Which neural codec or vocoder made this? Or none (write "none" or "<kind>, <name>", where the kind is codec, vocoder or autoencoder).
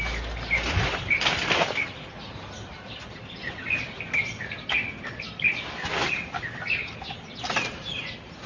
none